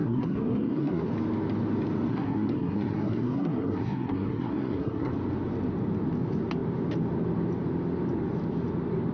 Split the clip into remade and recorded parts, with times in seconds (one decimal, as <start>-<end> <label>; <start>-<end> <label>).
0.0-1.1 remade; 1.1-2.1 recorded; 2.1-5.1 remade; 5.1-9.1 recorded